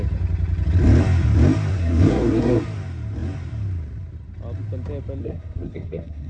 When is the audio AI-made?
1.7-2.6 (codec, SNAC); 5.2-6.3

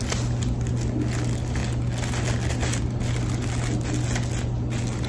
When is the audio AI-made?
none

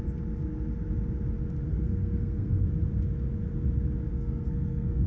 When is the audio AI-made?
1.7-2.7 (codec, SNAC); 4.1-5.1

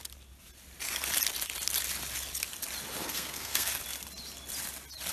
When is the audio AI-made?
3.0-3.8 (codec, SNAC)

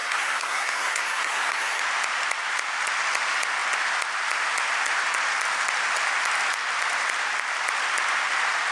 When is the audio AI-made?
0.0-1.8 (codec, SNAC)

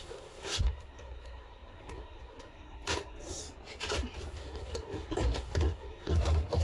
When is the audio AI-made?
0.0-3.4 (codec, SNAC); 4.3-6.6